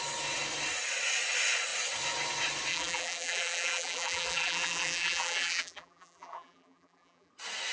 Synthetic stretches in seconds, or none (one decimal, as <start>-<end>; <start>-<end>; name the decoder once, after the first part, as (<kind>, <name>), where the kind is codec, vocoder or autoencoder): 2.7-7.3 (vocoder, BigVGAN v2)